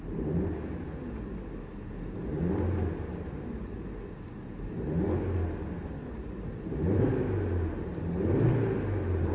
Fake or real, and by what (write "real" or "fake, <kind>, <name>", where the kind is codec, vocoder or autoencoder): real